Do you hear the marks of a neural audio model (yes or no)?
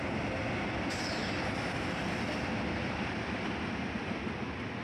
no